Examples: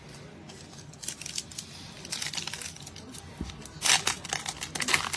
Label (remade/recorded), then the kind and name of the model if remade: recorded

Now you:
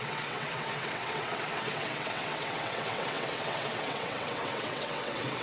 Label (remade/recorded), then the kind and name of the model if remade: remade, vocoder, WaveNeXt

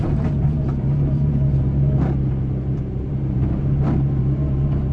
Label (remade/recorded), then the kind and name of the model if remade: remade, vocoder, BigVGAN v2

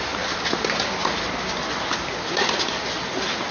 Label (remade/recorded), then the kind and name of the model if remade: recorded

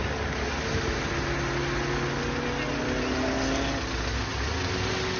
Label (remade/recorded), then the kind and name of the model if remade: recorded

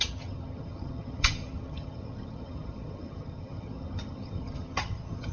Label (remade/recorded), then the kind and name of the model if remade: remade, vocoder, HiFi-GAN